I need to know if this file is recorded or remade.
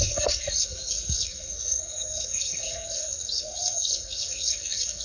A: remade